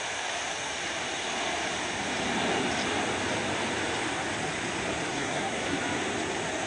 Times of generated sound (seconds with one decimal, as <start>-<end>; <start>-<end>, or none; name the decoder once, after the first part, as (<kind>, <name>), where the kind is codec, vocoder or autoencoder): 5.1-5.8 (codec, SNAC)